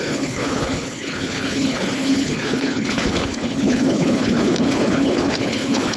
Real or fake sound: fake